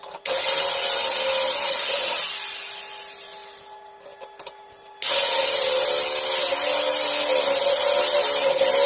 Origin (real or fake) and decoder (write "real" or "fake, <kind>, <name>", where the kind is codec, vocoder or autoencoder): real